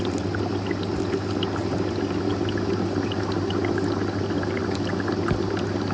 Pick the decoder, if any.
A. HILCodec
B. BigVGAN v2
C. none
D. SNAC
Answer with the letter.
C